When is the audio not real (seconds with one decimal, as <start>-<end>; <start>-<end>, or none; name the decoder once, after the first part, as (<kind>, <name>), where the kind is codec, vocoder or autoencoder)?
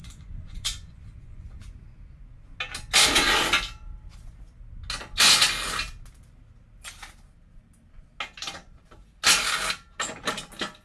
0.0-2.6 (vocoder, Vocos)